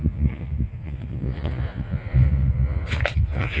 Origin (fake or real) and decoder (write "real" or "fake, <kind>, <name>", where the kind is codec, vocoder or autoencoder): fake, vocoder, Vocos